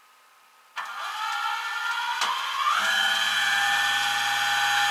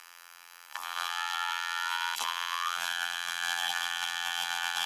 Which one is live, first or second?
first